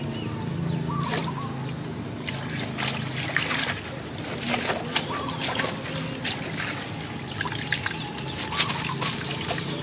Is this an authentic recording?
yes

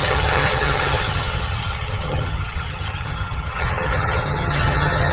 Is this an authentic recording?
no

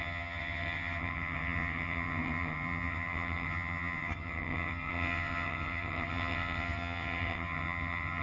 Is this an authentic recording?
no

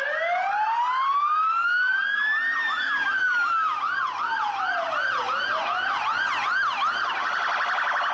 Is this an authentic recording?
yes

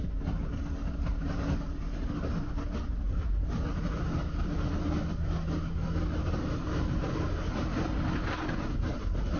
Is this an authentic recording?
yes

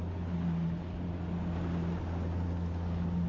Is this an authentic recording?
yes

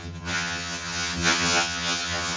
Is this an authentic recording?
no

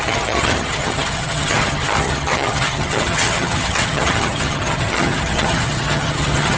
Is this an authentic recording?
no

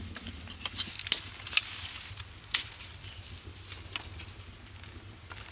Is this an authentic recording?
yes